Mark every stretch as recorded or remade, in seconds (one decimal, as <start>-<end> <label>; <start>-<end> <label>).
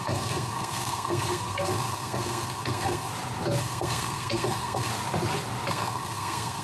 0.0-3.1 remade; 3.1-3.6 recorded; 3.6-4.9 remade; 4.9-5.7 recorded; 5.7-6.6 remade